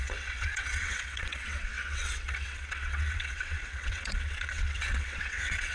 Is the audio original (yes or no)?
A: no